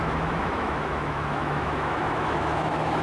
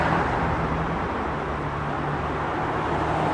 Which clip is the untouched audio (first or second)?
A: second